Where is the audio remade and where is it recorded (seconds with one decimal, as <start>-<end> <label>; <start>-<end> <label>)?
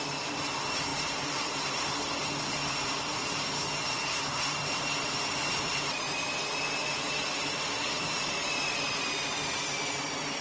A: 0.0-0.9 recorded; 0.9-1.6 remade; 1.6-10.4 recorded